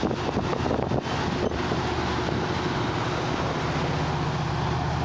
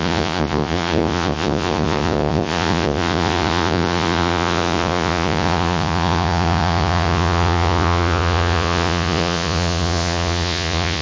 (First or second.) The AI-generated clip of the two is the second